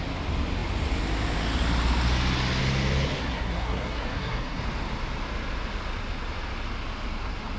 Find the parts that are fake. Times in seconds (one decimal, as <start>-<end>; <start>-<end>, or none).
3.2-4.6

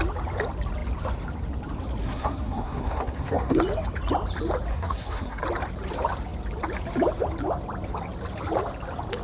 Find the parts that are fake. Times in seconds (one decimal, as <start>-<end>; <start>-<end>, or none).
2.0-3.6; 4.7-5.4

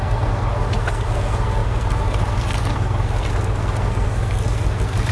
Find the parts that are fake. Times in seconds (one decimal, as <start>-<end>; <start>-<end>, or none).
0.0-5.1

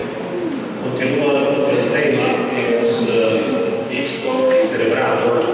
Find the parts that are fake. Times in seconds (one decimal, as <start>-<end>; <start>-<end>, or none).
2.5-3.0; 3.9-4.7

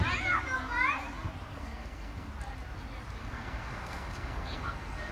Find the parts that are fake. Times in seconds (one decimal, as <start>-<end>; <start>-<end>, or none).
1.5-2.3; 3.2-5.1